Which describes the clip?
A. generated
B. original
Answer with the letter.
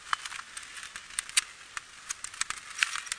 B